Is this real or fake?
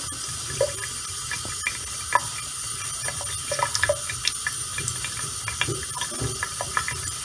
real